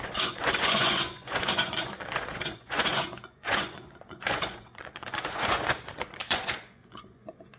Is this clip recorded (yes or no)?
no